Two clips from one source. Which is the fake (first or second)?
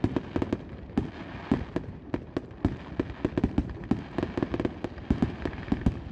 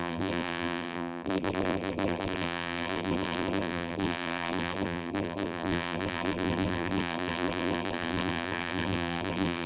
second